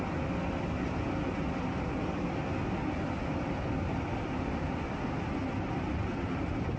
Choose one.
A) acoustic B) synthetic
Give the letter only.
A